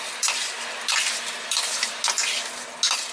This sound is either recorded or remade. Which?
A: recorded